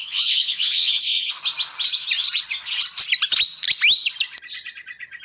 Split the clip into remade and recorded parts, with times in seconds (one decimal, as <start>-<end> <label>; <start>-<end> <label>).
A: 0.0-1.3 remade; 1.3-5.2 recorded